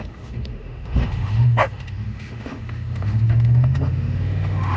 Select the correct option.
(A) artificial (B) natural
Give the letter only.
A